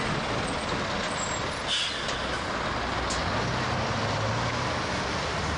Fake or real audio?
real